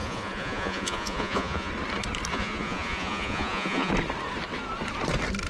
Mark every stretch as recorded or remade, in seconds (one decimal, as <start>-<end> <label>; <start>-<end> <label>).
0.0-1.7 remade; 1.7-2.3 recorded; 2.3-3.9 remade; 3.9-5.5 recorded